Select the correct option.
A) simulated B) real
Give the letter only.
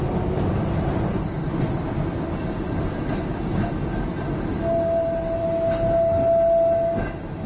B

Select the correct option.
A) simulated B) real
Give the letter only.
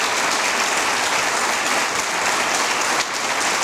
B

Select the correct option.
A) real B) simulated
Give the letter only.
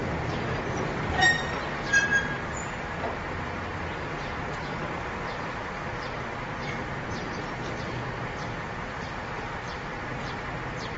B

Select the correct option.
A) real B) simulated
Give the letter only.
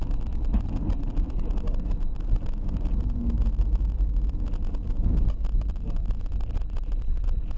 B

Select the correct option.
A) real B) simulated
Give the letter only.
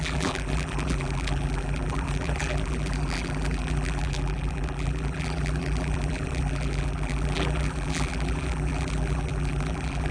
B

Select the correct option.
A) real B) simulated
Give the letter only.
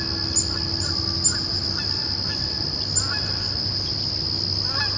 A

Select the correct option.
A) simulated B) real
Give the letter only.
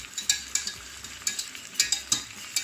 B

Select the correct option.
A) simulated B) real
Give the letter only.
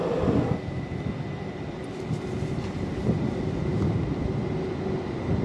B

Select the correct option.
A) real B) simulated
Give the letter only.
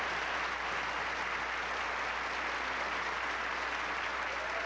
A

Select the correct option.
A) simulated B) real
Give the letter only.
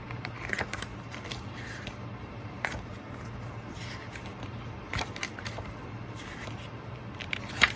A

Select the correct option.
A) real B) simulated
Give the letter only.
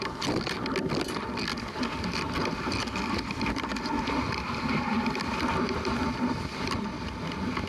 A